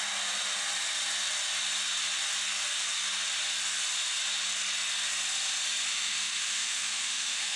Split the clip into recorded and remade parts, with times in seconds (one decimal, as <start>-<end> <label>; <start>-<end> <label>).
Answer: 0.0-5.9 recorded; 5.9-7.6 remade